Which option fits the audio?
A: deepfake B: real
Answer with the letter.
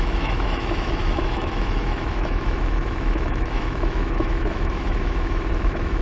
A